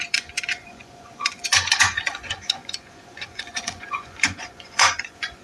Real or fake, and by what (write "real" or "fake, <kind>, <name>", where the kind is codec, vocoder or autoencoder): fake, vocoder, Vocos